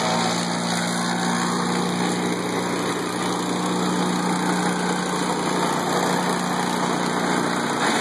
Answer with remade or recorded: recorded